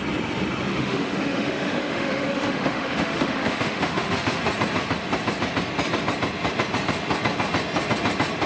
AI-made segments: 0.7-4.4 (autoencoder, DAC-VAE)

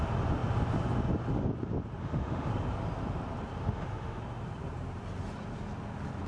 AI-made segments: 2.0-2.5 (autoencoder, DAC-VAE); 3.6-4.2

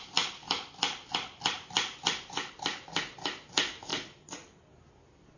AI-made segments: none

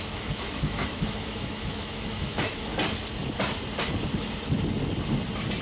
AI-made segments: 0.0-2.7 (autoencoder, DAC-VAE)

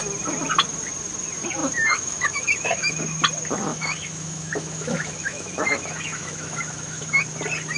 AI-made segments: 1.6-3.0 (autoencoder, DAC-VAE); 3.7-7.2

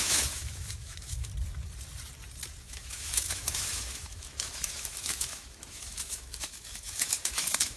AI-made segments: 0.0-1.3 (autoencoder, DAC-VAE); 2.6-7.8

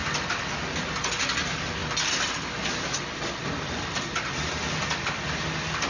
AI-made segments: none

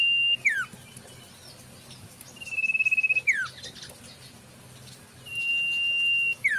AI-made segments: none